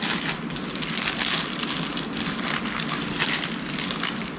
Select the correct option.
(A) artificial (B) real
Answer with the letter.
B